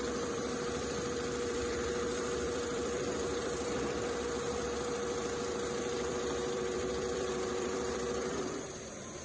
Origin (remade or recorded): remade